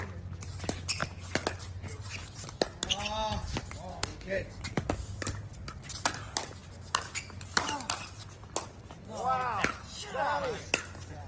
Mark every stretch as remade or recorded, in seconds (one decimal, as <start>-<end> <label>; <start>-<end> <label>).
0.0-3.9 recorded; 3.9-4.6 remade; 4.6-11.3 recorded